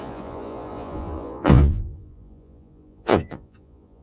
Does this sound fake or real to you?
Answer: fake